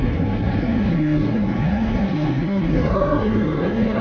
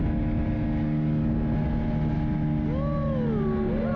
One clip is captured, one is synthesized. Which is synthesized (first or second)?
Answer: first